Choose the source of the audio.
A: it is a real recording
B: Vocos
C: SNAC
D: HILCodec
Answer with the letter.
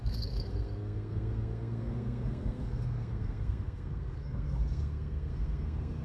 C